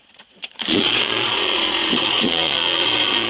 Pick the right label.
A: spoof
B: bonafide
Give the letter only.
A